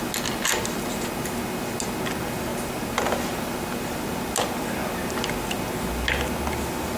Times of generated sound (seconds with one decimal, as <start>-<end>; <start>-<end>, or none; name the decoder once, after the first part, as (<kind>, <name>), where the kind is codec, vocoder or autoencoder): none